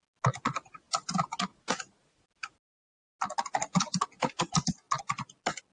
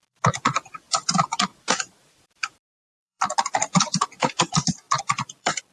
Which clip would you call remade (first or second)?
second